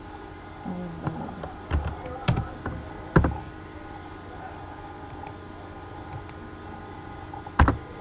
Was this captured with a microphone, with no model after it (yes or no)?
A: yes